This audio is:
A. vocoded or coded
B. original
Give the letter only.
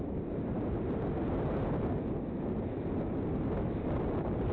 B